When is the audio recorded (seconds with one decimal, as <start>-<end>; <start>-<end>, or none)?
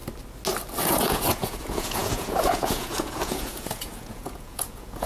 0.0-0.8